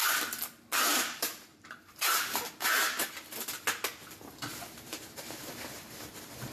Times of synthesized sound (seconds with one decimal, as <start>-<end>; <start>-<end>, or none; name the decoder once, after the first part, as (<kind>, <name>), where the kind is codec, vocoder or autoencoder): 1.0-3.0 (vocoder, BigVGAN v2); 4.5-6.5